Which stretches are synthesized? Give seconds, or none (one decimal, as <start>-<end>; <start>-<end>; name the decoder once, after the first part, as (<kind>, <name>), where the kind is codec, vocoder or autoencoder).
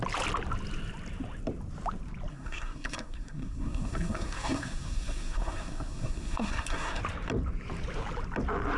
2.3-7.0 (codec, SNAC)